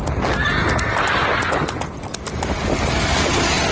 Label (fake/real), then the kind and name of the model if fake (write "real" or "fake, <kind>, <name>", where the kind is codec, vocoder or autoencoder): real